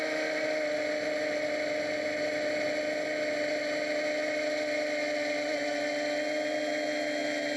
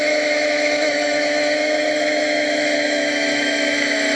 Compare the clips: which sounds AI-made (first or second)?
second